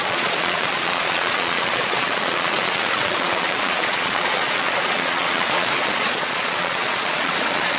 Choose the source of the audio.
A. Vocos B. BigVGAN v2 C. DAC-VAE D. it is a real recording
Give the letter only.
A